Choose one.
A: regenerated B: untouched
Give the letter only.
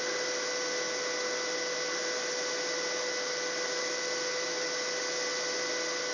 B